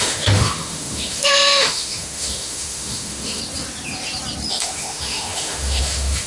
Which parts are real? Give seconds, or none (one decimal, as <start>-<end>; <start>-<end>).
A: 3.4-4.5